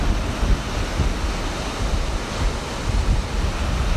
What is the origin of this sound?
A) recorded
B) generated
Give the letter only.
A